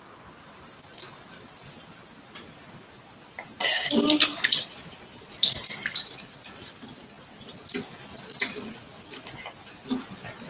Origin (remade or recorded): recorded